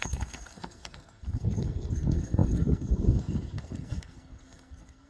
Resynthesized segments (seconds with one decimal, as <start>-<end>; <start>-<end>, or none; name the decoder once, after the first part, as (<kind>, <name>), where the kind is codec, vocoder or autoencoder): 0.0-5.1 (codec, SNAC)